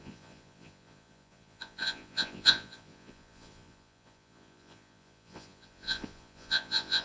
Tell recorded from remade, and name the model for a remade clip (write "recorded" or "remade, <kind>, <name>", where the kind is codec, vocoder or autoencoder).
remade, vocoder, Vocos